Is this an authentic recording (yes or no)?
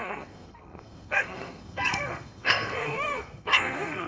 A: no